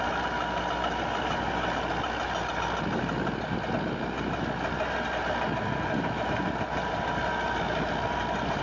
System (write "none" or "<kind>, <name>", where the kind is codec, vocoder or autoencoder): none